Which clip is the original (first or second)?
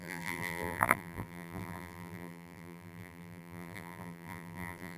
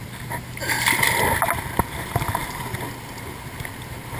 second